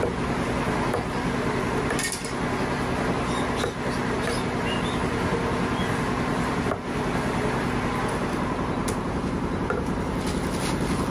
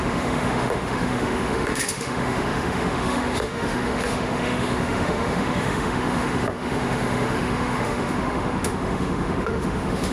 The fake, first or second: second